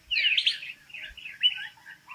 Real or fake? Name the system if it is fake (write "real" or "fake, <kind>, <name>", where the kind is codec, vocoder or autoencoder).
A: real